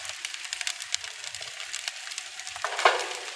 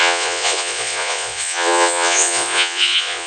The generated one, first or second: second